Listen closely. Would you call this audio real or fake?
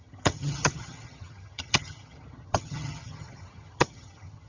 fake